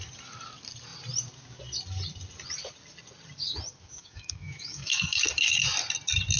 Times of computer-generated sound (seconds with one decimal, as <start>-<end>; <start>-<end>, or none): 4.0-5.6